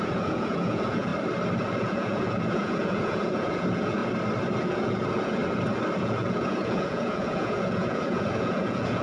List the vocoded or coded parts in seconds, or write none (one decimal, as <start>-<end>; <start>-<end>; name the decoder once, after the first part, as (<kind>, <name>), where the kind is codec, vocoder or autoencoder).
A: 0.0-1.1 (vocoder, Vocos); 1.6-4.0; 4.6-5.4; 6.0-9.0